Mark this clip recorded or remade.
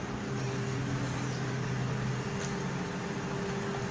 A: recorded